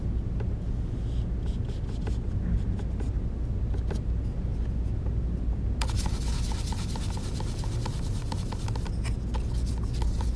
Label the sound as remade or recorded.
recorded